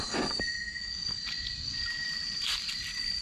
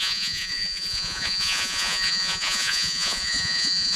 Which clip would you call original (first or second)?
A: first